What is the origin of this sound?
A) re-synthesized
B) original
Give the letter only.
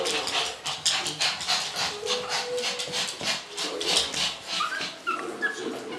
B